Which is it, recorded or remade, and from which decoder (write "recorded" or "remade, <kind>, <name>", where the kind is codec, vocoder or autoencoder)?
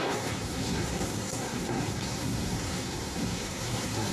remade, codec, SNAC